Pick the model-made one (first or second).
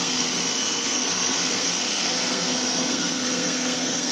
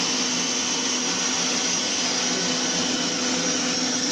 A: first